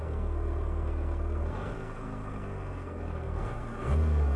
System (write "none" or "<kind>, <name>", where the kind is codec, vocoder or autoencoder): codec, SNAC